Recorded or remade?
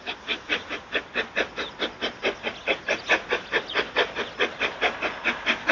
recorded